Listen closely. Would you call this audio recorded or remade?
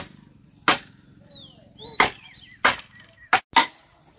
recorded